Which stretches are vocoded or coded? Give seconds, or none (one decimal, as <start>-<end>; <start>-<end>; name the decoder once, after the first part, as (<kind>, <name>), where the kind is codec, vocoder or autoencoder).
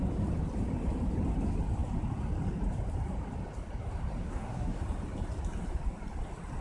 4.2-4.8 (codec, SNAC)